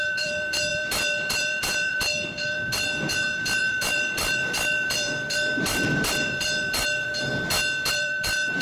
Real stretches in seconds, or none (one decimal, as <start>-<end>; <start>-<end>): 7.3-7.9